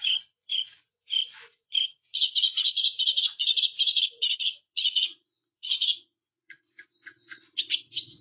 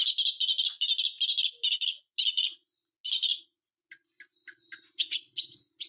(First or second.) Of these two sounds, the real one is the second